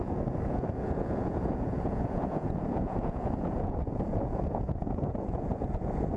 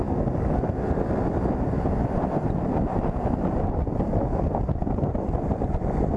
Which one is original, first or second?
second